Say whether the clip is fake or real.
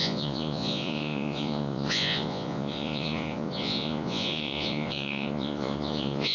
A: fake